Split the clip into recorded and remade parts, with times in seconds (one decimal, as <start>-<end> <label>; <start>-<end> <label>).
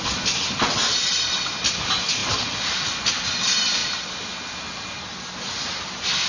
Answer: 0.0-6.3 recorded